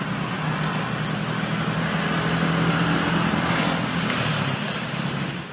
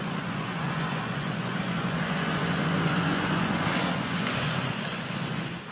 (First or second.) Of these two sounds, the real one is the first